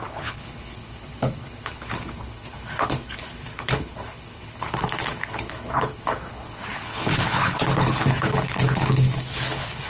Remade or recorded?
remade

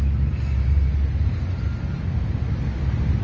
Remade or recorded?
recorded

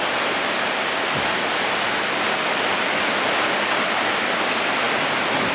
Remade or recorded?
recorded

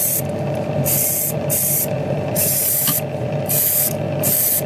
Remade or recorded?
remade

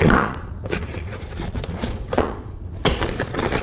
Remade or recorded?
remade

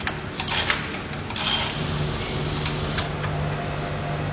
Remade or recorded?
recorded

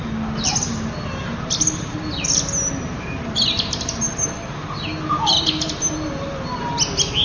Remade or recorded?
recorded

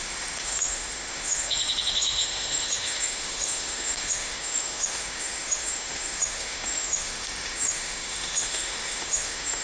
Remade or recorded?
remade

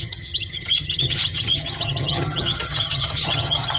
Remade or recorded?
remade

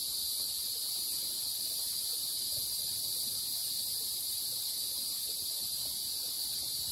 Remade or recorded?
recorded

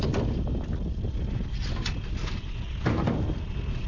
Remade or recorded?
recorded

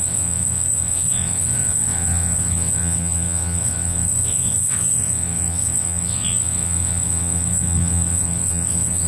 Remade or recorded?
remade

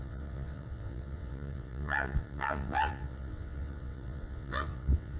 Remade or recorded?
remade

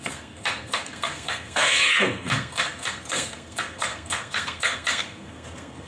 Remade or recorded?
remade